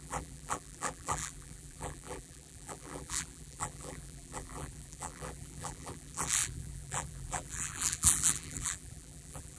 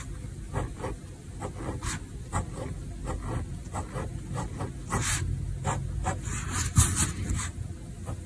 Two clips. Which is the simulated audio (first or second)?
first